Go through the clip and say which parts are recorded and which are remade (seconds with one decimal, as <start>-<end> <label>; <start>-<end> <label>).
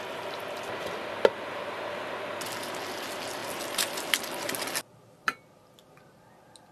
0.0-6.7 recorded